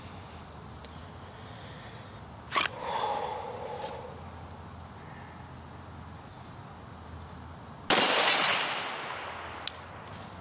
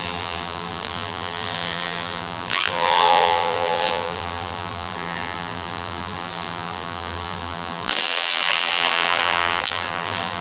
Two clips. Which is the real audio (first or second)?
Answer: first